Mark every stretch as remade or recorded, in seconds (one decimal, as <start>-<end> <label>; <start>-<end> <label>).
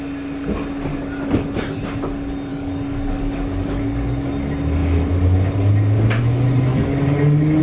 0.0-0.9 recorded; 0.9-1.8 remade; 1.8-2.5 recorded; 2.5-4.3 remade; 4.3-6.7 recorded; 6.7-7.6 remade